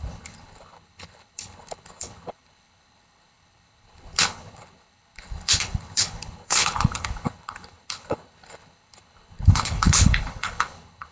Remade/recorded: remade